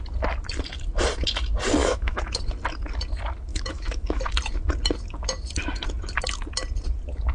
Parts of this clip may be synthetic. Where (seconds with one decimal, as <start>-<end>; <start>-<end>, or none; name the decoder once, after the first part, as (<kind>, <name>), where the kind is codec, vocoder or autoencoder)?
1.8-2.4 (autoencoder, DAC-VAE); 3.5-4.2

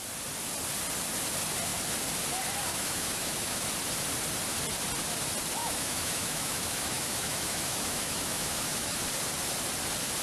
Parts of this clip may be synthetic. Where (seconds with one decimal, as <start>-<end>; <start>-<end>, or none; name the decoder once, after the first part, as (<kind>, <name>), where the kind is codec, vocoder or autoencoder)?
2.7-3.6 (autoencoder, DAC-VAE); 5.6-9.0

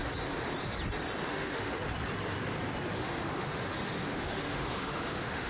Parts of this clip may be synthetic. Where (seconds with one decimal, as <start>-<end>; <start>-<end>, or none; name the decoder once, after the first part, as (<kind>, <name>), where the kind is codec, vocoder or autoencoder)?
1.3-1.8 (autoencoder, DAC-VAE); 3.0-5.5

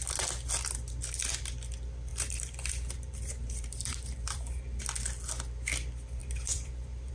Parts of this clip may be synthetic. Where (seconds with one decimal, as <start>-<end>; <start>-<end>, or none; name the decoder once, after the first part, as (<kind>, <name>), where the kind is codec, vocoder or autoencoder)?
2.1-4.8 (vocoder, BigVGAN v2); 6.2-7.1